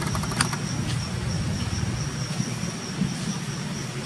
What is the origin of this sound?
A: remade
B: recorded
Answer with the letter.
B